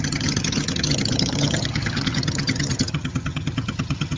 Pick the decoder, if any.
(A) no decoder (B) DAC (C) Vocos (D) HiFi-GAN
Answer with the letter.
D